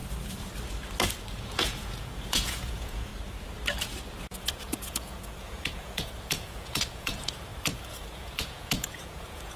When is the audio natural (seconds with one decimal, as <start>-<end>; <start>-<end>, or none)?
0.0-1.3; 3.1-4.2